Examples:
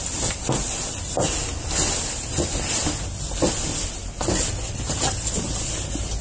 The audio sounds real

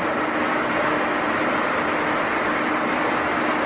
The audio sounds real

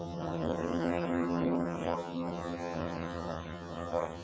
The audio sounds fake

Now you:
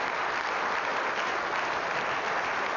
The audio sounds real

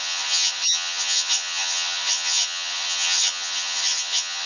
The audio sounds fake